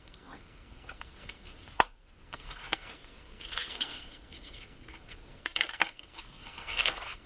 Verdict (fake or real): fake